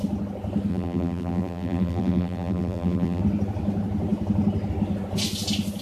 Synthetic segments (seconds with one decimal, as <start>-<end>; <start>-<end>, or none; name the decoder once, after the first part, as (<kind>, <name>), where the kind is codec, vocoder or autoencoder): 0.7-3.2 (vocoder, BigVGAN v2)